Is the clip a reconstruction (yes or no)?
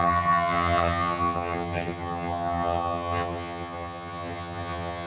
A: yes